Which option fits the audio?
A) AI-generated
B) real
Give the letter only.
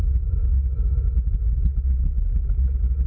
B